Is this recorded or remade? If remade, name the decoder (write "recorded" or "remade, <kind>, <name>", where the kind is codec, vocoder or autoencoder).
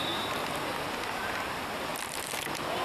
recorded